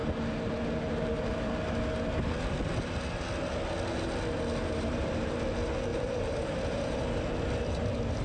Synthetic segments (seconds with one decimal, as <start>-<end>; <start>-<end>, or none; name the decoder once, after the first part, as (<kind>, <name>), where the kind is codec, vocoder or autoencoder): 0.0-1.5 (vocoder, BigVGAN v2); 4.6-5.3; 5.9-7.0